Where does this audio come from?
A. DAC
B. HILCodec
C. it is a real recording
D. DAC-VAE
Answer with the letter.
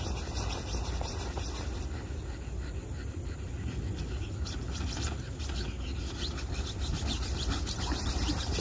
C